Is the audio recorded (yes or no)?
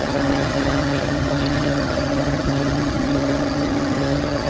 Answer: no